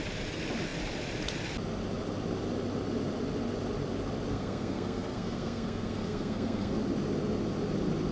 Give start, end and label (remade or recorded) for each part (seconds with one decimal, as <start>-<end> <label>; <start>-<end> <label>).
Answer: 0.0-4.3 recorded; 4.3-6.8 remade; 6.8-8.1 recorded